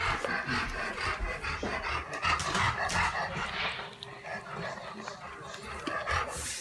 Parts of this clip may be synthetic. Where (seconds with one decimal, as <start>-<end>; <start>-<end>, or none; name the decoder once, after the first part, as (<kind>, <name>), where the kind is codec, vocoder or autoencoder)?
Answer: none